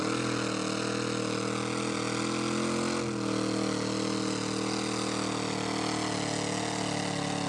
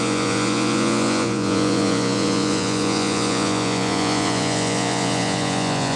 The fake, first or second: second